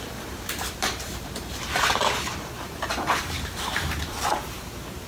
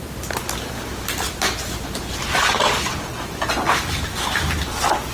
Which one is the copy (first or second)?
first